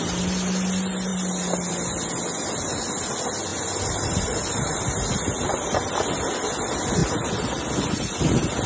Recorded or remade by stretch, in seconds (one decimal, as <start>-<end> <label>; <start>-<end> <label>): 0.0-3.5 recorded; 3.5-4.8 remade; 4.8-7.0 recorded; 7.0-7.7 remade; 7.7-8.7 recorded